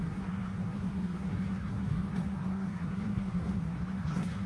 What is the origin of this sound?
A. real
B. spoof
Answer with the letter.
B